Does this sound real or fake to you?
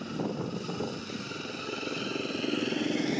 real